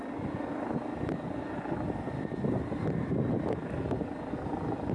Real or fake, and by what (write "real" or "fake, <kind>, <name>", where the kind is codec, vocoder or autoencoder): real